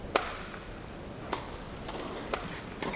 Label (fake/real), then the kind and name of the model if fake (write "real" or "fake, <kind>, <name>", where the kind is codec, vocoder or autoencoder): real